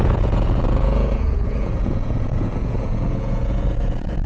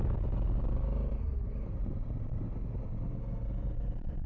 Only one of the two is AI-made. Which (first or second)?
first